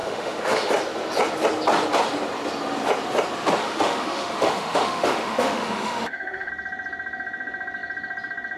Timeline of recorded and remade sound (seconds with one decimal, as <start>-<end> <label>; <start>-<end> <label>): 0.0-0.7 remade; 0.7-3.6 recorded; 3.6-6.5 remade; 6.5-8.6 recorded